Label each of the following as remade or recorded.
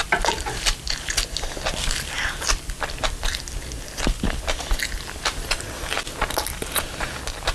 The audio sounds recorded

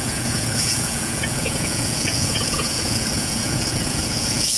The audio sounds remade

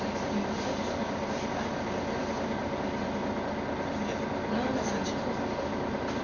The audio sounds recorded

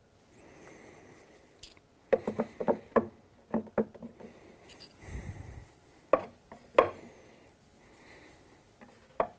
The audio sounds recorded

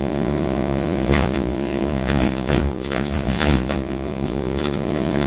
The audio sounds remade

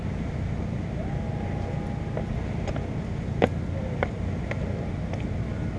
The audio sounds recorded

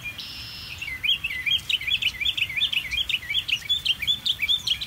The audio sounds remade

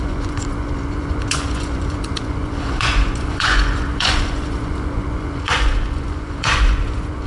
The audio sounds remade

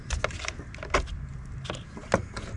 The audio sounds recorded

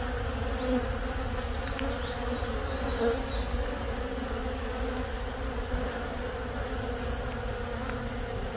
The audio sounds recorded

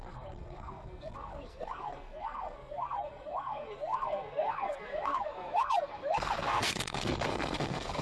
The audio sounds remade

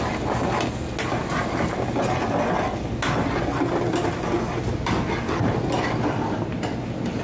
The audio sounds recorded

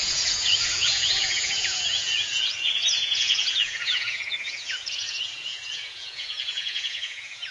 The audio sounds remade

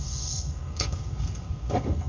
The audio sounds remade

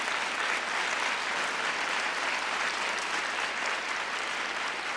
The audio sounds recorded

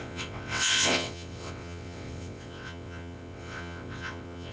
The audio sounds remade